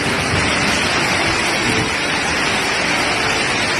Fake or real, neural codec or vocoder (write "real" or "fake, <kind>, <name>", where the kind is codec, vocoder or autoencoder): real